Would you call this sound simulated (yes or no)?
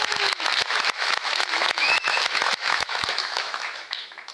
yes